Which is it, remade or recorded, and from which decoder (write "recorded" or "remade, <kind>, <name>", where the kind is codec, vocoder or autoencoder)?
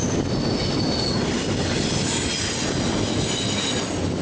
recorded